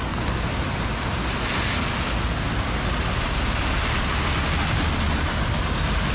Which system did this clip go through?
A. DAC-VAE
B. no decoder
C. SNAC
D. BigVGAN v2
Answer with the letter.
B